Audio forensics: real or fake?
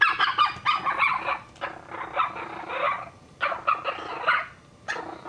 real